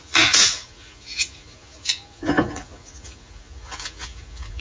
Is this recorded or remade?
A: remade